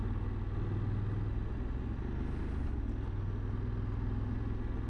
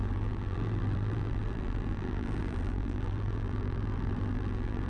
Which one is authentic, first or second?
first